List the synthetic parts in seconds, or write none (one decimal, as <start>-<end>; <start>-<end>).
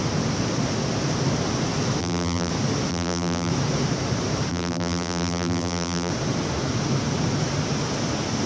2.0-2.5; 2.9-3.5; 4.5-6.1